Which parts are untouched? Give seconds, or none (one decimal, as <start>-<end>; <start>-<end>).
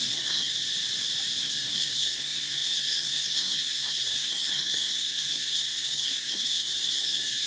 0.5-1.4